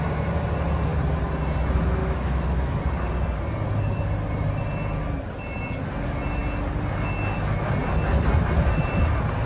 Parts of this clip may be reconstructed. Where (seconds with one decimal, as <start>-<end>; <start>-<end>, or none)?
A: 2.0-2.8